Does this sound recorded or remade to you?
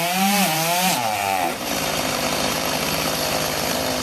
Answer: remade